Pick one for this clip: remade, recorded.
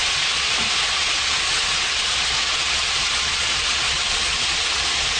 remade